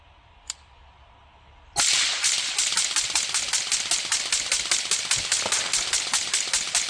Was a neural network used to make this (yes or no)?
no